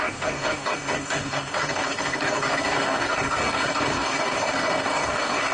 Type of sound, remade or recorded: remade